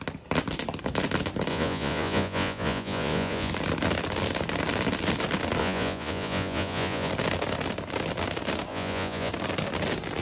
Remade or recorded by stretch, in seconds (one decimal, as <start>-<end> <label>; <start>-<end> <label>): 0.0-1.5 recorded; 1.5-3.5 remade; 3.5-5.6 recorded; 5.6-7.1 remade; 7.1-8.7 recorded; 8.7-9.3 remade; 9.3-10.2 recorded